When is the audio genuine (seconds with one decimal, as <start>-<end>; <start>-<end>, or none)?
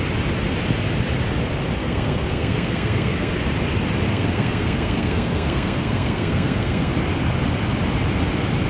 0.0-1.8; 3.3-4.1; 6.9-8.7